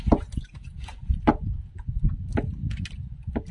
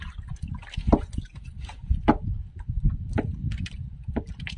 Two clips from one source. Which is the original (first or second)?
first